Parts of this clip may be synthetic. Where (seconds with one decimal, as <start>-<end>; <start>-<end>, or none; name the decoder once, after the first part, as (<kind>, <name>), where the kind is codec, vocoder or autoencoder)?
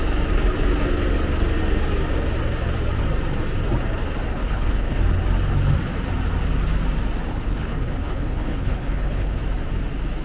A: 4.3-5.0 (codec, HILCodec); 7.3-9.4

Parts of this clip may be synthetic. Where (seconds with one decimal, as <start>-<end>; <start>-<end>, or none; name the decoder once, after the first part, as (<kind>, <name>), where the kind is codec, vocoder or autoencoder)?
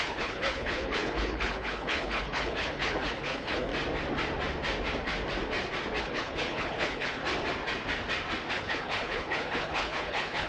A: 0.0-3.7 (codec, HILCodec); 6.0-7.2; 8.5-10.5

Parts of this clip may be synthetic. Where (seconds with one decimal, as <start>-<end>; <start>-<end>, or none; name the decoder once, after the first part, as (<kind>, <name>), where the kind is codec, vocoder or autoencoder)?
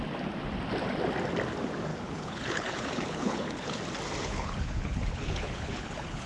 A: 1.9-3.8 (codec, HILCodec); 4.2-6.3